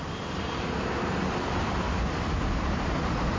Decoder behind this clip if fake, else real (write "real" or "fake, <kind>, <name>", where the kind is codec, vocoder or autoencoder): fake, vocoder, BigVGAN v2